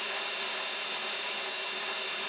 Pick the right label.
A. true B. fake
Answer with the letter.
A